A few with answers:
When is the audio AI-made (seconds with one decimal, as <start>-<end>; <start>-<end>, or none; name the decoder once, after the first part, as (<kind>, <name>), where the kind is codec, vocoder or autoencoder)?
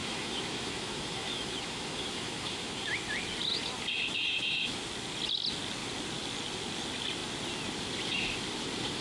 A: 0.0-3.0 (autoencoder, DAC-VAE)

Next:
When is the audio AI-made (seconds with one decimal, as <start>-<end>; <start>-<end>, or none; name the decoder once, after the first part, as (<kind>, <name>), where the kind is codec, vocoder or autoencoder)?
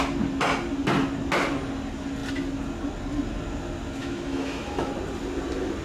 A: 4.0-4.9 (autoencoder, DAC-VAE)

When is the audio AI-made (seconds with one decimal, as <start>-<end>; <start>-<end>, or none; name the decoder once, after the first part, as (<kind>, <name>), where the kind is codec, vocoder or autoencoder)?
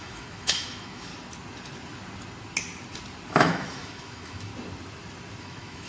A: 0.0-1.1 (autoencoder, DAC-VAE); 3.3-4.5; 5.4-5.9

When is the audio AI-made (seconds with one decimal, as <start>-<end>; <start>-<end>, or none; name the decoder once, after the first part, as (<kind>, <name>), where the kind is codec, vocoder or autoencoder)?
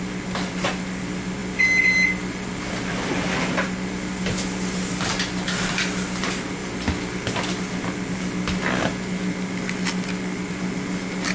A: none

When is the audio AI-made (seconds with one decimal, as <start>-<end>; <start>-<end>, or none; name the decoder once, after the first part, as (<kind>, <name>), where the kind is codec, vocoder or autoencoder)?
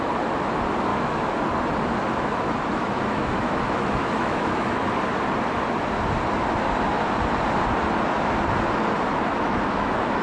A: 0.9-1.4 (autoencoder, DAC-VAE); 2.7-4.8; 9.1-10.2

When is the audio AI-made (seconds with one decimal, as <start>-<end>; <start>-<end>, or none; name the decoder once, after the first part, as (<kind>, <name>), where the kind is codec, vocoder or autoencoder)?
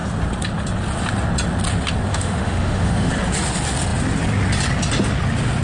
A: 2.1-3.1 (autoencoder, DAC-VAE)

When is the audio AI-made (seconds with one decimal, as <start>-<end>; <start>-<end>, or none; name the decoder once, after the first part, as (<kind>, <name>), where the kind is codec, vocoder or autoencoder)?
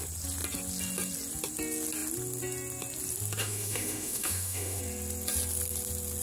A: 3.4-4.8 (autoencoder, DAC-VAE)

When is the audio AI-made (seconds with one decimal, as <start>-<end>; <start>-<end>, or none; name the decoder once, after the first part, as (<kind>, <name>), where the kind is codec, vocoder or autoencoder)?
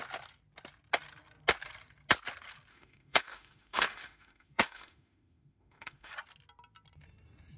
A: 2.7-6.1 (autoencoder, DAC-VAE)